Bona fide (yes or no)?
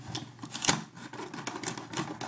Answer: yes